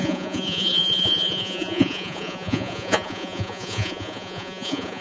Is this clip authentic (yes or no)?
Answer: no